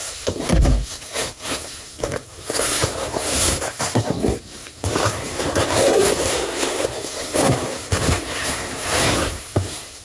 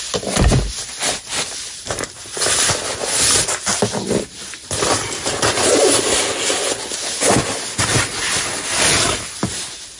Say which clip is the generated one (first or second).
first